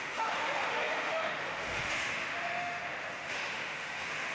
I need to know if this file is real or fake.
fake